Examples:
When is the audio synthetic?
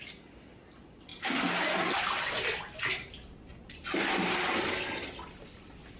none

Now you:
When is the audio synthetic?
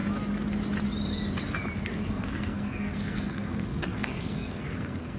1.9-5.2 (codec, SNAC)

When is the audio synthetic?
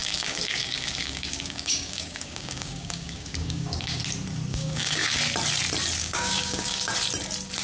0.0-4.0 (codec, DAC); 4.5-5.2; 6.0-6.9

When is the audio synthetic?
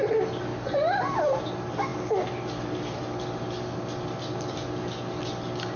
0.5-1.5 (vocoder, BigVGAN v2)